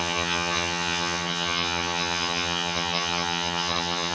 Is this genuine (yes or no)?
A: no